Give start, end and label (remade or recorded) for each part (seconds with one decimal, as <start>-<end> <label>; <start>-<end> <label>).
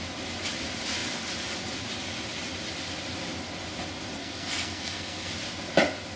0.0-4.2 recorded; 4.2-5.3 remade; 5.3-6.2 recorded